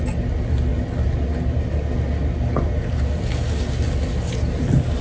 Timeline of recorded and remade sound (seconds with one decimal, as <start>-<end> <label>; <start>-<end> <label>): 0.0-5.0 recorded